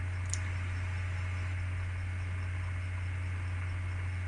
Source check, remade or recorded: recorded